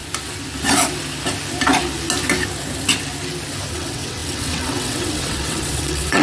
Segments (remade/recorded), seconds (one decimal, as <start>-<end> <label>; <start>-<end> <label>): 0.0-3.7 recorded; 3.7-6.2 remade

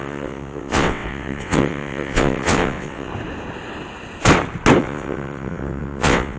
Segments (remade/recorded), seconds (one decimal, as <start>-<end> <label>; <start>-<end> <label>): 0.0-3.1 remade; 3.1-4.8 recorded; 4.8-6.4 remade

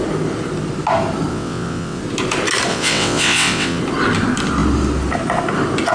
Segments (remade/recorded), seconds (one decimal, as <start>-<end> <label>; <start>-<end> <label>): 0.0-1.3 recorded; 1.3-2.0 remade; 2.0-2.7 recorded; 2.7-3.8 remade; 3.8-5.9 recorded